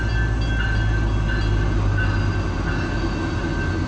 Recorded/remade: recorded